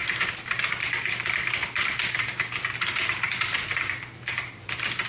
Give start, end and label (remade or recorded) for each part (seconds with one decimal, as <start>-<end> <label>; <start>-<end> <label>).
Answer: 0.0-1.9 remade; 1.9-5.1 recorded